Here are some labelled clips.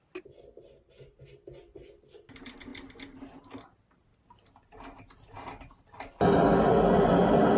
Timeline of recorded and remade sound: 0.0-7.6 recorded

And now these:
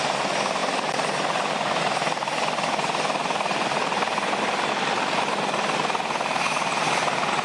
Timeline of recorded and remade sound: 0.0-7.4 recorded

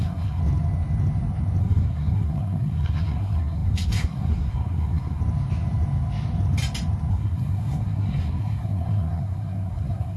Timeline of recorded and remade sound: 0.0-0.4 remade; 0.4-1.6 recorded; 1.6-5.2 remade; 5.2-7.1 recorded; 7.1-10.2 remade

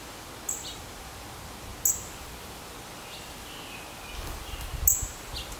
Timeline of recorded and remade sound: 0.0-5.6 recorded

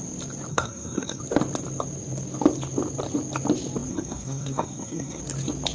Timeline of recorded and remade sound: 0.0-0.5 recorded; 0.5-1.2 remade; 1.2-3.9 recorded; 3.9-5.2 remade; 5.2-5.7 recorded

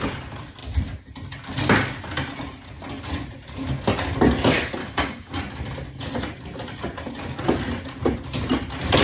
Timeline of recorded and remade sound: 0.0-4.8 recorded; 4.8-5.4 remade; 5.4-9.0 recorded

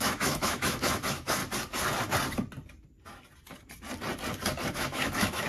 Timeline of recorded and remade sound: 0.0-1.4 remade; 1.4-4.7 recorded; 4.7-5.5 remade

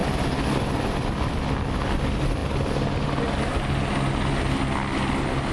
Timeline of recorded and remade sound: 0.0-5.5 recorded